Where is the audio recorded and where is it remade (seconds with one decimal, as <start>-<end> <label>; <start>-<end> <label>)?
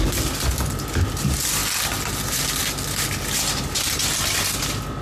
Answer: 0.0-5.0 recorded